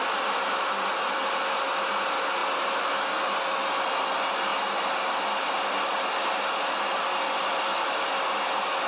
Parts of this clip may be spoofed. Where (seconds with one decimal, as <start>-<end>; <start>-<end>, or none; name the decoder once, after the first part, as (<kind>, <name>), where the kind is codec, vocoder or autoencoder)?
none

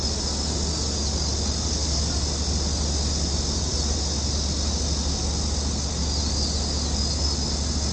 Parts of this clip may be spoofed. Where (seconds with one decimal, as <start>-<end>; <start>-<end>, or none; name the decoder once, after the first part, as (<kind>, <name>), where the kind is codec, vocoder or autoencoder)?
none

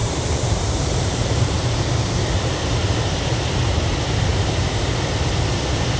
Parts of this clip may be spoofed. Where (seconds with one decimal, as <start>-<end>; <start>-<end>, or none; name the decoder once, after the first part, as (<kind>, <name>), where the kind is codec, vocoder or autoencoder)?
0.0-2.7 (vocoder, BigVGAN v2); 4.3-4.9

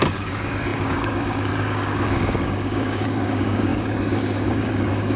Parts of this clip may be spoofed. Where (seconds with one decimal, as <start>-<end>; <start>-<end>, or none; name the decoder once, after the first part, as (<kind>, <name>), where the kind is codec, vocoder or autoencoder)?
0.0-5.2 (codec, DAC)

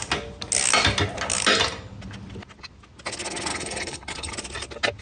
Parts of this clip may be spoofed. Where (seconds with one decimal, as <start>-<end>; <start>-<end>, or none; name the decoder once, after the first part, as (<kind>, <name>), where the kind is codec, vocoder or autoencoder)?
3.5-4.3 (codec, HILCodec)

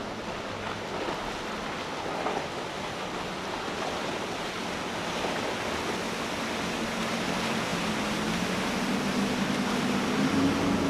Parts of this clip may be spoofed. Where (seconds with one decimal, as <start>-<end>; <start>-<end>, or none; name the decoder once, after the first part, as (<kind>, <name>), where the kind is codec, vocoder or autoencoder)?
none

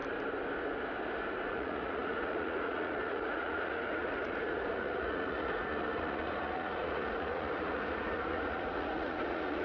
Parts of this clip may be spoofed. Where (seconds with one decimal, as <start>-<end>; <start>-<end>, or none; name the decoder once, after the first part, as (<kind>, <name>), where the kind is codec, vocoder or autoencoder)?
1.3-9.6 (vocoder, Vocos)